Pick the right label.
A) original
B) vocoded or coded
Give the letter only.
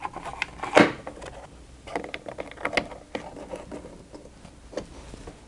A